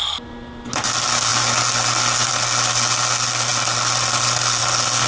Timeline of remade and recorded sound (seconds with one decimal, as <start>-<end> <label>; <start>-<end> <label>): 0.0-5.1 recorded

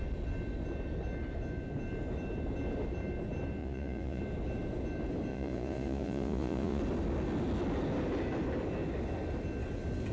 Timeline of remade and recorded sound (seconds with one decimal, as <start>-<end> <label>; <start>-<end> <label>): 0.0-3.6 recorded; 3.6-4.2 remade; 4.2-5.3 recorded; 5.3-6.8 remade; 6.8-10.1 recorded

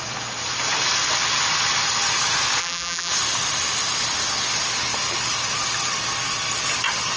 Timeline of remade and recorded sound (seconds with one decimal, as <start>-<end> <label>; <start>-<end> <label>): 0.0-2.6 recorded; 2.6-3.1 remade; 3.1-7.2 recorded